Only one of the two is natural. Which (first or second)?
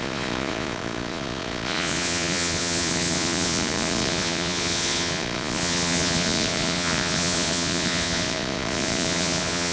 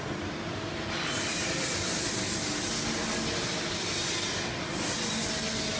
second